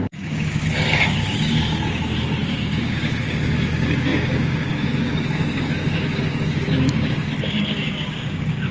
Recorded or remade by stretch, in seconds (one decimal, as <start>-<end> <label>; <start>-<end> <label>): 0.0-8.7 remade